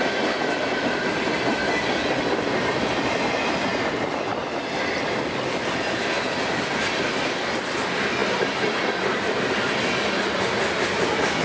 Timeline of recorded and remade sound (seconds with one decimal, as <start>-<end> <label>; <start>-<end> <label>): 0.0-11.4 recorded